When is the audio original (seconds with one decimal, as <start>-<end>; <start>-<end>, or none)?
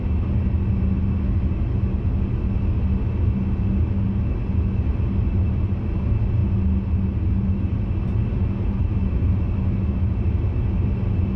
0.0-8.9; 9.4-11.4